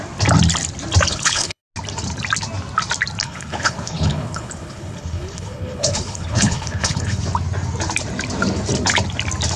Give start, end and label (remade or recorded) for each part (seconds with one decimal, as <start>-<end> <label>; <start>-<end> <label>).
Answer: 0.0-1.1 recorded; 1.1-1.6 remade; 1.6-3.2 recorded; 3.2-7.2 remade; 7.2-9.6 recorded